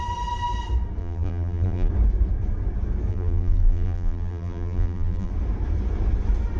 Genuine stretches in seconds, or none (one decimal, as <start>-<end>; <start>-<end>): 0.0-1.0; 1.9-3.1; 5.3-6.6